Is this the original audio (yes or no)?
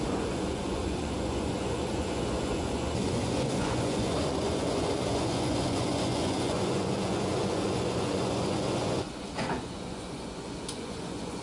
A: no